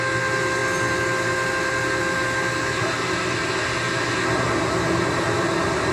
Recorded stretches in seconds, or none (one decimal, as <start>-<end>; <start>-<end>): 0.0-5.9